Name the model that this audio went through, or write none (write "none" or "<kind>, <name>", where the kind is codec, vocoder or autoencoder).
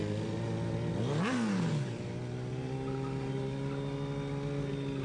none